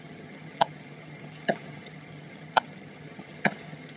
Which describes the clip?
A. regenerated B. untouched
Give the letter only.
A